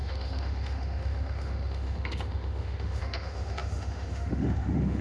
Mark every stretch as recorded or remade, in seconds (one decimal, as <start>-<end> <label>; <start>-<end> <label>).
0.0-5.0 remade